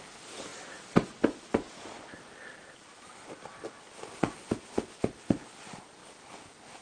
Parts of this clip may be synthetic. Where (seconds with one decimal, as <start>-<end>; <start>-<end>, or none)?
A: none